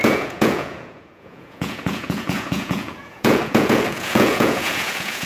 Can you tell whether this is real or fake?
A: fake